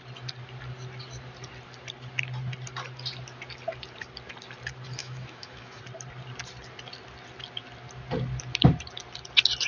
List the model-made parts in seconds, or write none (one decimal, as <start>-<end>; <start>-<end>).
5.0-5.8

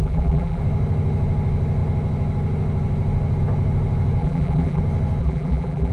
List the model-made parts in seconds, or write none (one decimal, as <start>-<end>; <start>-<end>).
0.0-0.6; 4.2-4.8; 5.2-5.9

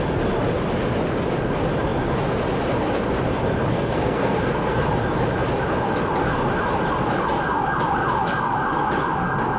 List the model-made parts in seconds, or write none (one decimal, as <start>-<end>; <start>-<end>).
3.7-4.8

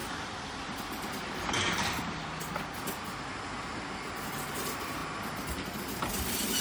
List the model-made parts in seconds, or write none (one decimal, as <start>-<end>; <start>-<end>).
none

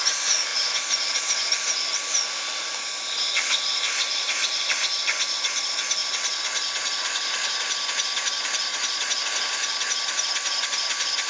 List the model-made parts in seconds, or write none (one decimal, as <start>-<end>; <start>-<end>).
8.7-9.2

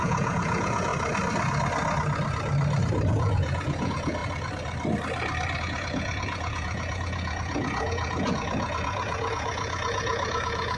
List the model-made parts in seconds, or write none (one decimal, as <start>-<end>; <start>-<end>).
0.0-0.9; 3.1-4.2; 5.6-10.8

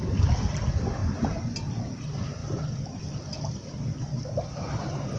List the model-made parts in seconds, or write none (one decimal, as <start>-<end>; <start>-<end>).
2.4-4.2